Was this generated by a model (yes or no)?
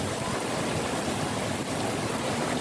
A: no